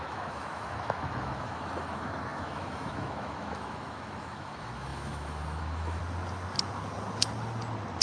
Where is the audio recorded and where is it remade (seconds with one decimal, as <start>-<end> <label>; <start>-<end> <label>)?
0.0-6.0 remade; 6.0-8.0 recorded